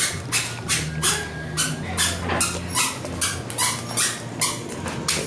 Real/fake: real